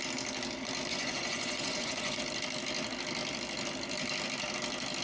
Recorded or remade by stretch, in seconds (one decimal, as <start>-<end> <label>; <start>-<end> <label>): 0.0-0.9 recorded; 0.9-2.2 remade; 2.2-5.0 recorded